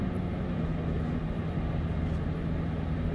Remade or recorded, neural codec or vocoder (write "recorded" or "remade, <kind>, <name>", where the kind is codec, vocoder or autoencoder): recorded